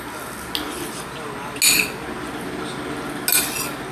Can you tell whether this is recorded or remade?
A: recorded